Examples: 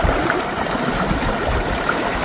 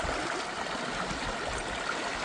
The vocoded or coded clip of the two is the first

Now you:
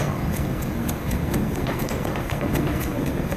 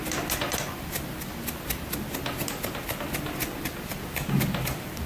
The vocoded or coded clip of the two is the first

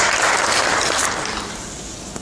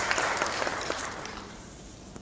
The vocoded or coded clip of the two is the second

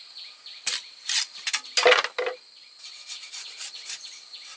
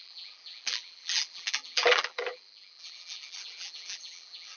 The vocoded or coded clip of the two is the second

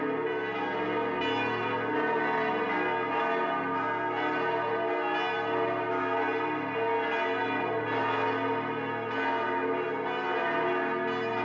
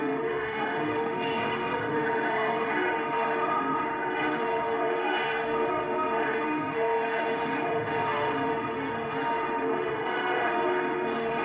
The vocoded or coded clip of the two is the second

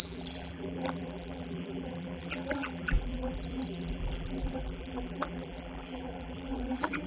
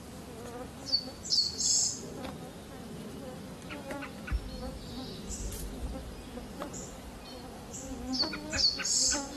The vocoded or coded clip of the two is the first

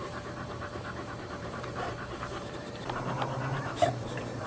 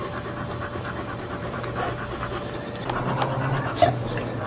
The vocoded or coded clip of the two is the first